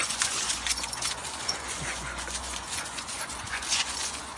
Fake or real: fake